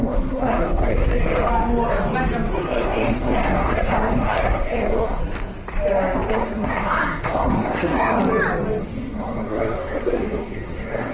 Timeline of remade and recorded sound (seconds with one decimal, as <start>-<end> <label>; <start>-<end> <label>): 0.0-1.5 remade; 1.5-2.5 recorded; 2.5-5.2 remade; 5.2-6.3 recorded; 6.3-8.2 remade; 8.2-8.8 recorded; 8.8-11.1 remade